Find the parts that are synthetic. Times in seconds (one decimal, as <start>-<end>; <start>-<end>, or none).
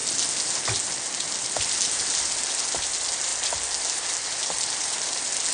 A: none